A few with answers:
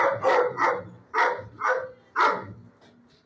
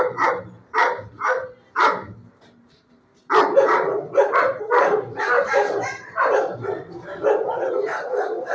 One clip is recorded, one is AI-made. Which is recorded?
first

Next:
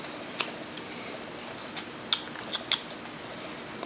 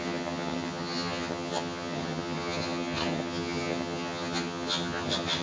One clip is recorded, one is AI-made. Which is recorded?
first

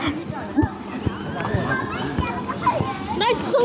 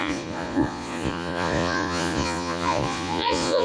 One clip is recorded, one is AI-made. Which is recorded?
first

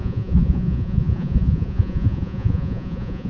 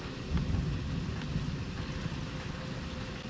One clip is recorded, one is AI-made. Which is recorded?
second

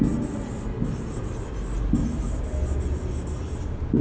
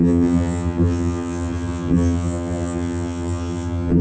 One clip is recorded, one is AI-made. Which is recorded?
first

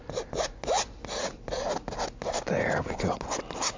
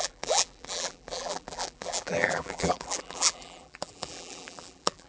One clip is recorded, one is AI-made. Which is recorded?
first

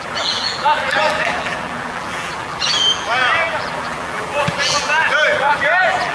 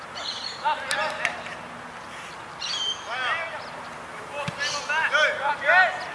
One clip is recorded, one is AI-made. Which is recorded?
second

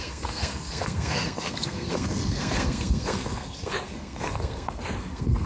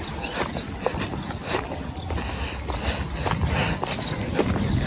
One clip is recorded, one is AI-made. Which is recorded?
second